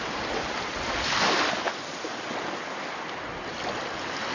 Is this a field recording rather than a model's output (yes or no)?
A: yes